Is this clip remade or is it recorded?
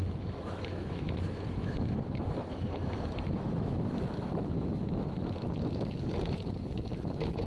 remade